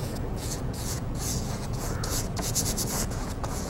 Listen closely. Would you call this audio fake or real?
fake